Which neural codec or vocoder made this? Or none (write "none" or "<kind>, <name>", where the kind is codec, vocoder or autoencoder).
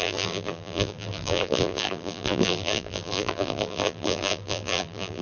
vocoder, BigVGAN v2